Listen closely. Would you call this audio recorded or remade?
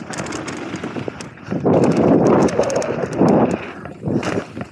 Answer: recorded